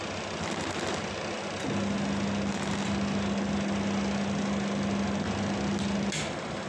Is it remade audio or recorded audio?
recorded